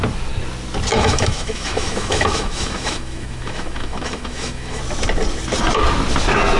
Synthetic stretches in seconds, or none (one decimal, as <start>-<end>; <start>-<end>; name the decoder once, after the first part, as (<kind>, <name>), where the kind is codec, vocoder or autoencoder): 0.9-4.8 (autoencoder, DAC-VAE)